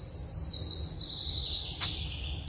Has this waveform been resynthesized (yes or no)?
no